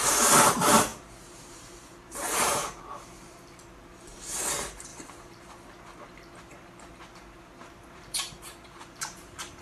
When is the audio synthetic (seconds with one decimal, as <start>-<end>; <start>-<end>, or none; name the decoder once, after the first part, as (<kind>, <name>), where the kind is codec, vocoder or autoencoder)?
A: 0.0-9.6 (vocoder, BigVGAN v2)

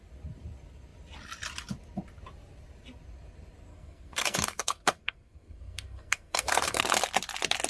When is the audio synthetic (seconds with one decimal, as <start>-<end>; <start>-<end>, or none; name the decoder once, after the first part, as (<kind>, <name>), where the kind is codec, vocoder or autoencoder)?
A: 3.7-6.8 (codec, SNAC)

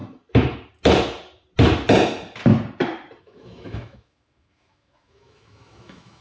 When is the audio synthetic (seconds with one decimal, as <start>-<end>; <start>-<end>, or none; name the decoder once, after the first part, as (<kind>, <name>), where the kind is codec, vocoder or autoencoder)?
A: 3.2-6.2 (autoencoder, DAC-VAE)

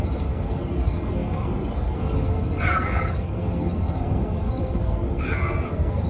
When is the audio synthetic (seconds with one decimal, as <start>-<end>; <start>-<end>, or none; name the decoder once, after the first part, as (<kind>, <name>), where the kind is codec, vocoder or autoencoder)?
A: 0.0-6.1 (codec, SNAC)

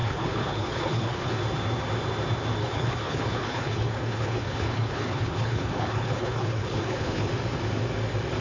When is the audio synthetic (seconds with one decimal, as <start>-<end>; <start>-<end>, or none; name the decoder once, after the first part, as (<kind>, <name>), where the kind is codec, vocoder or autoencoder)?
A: 0.0-1.4 (codec, HILCodec); 2.6-7.3

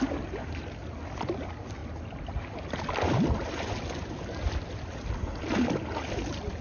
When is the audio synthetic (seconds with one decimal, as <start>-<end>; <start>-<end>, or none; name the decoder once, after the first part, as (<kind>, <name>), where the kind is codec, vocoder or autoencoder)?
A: none

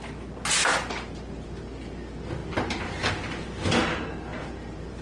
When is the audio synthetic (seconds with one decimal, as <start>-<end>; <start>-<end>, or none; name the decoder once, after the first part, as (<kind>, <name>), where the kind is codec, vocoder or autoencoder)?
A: 2.4-3.1 (vocoder, BigVGAN v2); 4.3-5.0